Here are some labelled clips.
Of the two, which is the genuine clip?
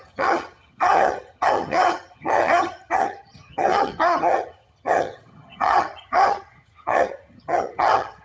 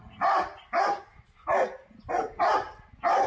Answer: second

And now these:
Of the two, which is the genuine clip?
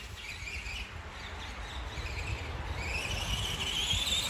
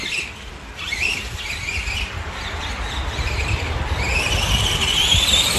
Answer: first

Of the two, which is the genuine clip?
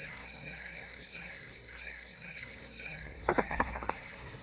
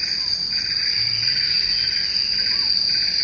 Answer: second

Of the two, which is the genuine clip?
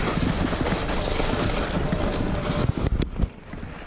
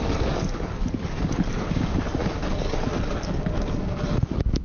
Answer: first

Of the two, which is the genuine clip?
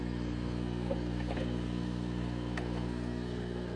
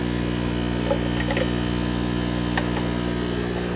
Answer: second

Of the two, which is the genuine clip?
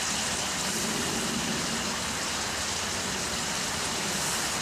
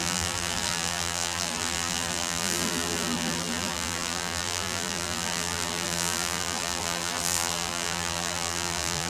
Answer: first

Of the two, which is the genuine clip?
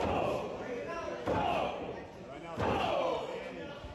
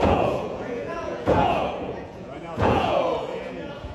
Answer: first